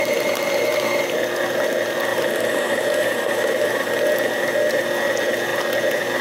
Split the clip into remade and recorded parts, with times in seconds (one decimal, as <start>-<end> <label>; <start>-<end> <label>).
0.0-2.1 recorded; 2.1-3.9 remade; 3.9-6.2 recorded